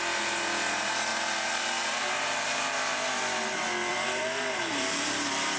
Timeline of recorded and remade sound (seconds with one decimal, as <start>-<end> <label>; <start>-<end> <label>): 0.0-3.9 recorded; 3.9-5.6 remade